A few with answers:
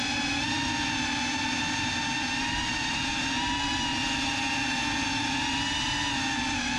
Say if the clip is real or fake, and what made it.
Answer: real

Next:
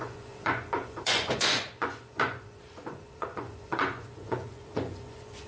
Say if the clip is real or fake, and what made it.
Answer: fake, vocoder, Vocos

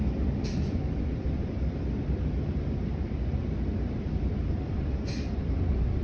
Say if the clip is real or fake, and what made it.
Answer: fake, vocoder, BigVGAN v2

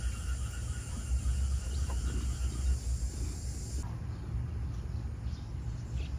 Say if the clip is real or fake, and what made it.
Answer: real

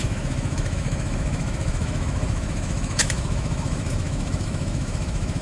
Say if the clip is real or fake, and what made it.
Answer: fake, autoencoder, DAC-VAE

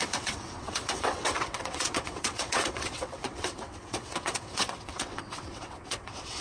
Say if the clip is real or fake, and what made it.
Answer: fake, vocoder, WaveNeXt